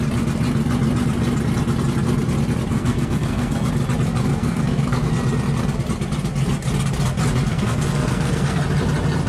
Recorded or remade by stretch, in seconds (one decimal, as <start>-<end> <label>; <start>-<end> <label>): 0.0-2.7 recorded; 2.7-3.7 remade; 3.7-4.3 recorded; 4.3-5.1 remade; 5.1-7.5 recorded; 7.5-8.6 remade; 8.6-9.3 recorded